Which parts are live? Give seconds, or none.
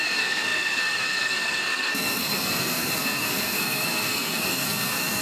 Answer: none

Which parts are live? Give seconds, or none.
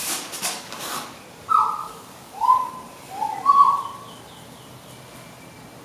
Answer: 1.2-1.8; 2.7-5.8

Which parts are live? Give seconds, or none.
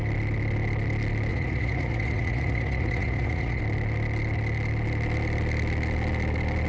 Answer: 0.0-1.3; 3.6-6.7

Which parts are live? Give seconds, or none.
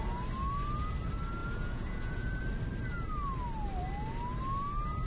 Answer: 0.0-1.4; 2.4-5.1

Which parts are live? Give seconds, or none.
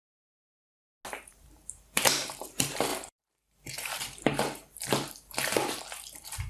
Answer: 0.0-1.3